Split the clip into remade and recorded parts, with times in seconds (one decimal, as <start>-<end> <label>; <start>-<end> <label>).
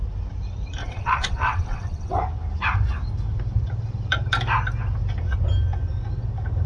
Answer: 0.0-0.8 recorded; 0.8-2.2 remade; 2.2-6.7 recorded